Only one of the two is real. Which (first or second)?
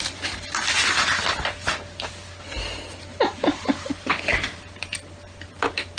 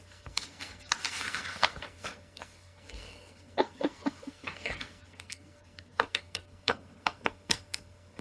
first